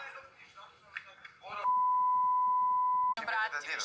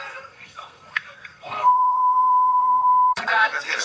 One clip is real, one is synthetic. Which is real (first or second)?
first